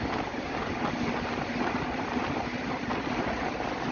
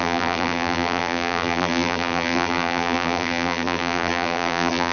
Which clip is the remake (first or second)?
second